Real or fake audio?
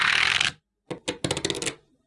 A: real